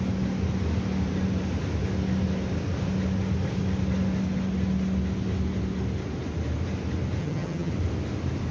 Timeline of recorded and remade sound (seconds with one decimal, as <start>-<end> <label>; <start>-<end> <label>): 0.0-7.2 recorded; 7.2-7.7 remade; 7.7-8.5 recorded